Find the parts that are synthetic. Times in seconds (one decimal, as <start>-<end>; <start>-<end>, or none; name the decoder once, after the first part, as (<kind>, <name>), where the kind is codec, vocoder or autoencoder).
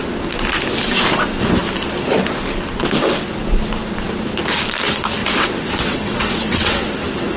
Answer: 5.2-6.9 (vocoder, WaveNeXt)